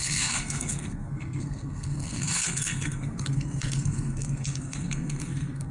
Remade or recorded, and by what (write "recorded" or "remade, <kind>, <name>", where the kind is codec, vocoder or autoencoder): remade, codec, SNAC